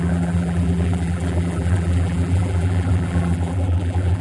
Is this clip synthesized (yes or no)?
yes